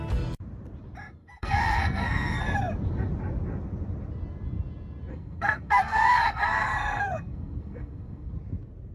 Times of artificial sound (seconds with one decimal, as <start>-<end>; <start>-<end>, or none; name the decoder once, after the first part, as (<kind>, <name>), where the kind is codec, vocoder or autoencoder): 1.2-2.6 (codec, SNAC); 5.1-8.3